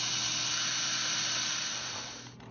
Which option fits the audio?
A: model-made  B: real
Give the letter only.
B